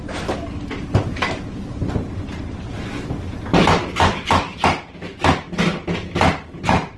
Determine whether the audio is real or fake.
real